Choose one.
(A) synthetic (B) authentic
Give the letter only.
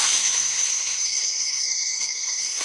A